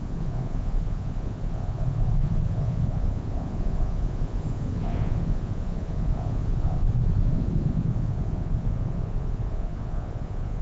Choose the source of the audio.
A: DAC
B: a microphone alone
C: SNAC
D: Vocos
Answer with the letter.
D